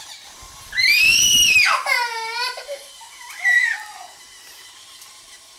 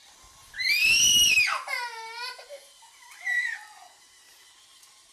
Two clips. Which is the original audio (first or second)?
second